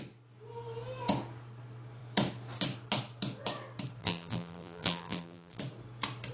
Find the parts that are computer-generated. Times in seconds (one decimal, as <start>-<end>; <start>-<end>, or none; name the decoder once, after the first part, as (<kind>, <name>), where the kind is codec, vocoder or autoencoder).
4.0-5.6 (vocoder, BigVGAN v2)